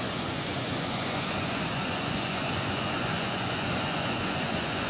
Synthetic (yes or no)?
yes